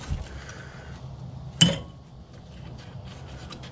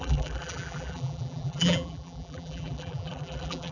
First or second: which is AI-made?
second